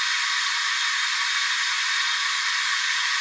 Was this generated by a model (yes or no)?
no